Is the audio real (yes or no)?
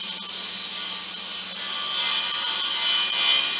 yes